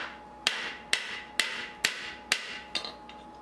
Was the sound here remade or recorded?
recorded